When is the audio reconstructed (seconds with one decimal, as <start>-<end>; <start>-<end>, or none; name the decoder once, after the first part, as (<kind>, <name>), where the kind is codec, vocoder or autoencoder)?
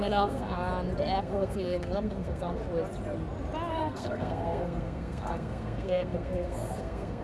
0.0-0.7 (codec, SNAC); 1.2-2.6; 3.7-7.2